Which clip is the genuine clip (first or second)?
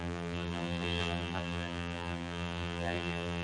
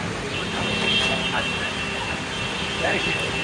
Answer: second